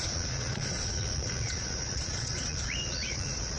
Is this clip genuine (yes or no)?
no